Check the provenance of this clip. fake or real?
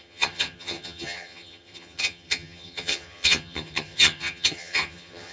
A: fake